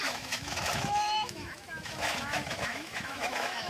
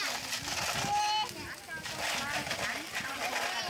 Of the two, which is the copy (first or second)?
first